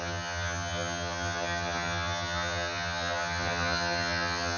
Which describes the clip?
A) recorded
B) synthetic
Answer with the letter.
B